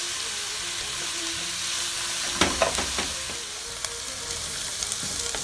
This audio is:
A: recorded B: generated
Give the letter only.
A